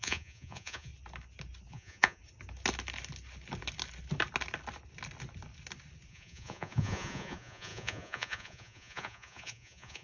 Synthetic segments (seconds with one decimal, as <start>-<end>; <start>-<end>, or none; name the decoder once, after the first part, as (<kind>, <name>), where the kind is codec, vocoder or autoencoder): 0.0-0.9 (vocoder, Vocos); 1.7-2.2; 6.1-10.0